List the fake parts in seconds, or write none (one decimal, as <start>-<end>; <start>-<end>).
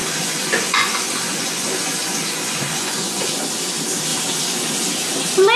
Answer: 0.0-3.4